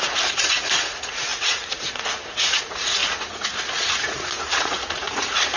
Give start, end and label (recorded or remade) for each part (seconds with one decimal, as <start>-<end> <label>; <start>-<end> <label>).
0.0-5.6 remade